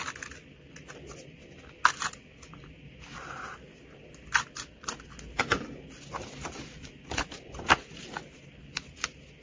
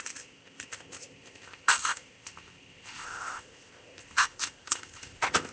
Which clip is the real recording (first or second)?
first